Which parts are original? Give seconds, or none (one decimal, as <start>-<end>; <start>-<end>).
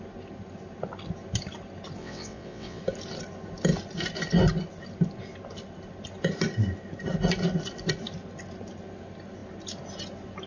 0.0-2.0; 2.8-10.5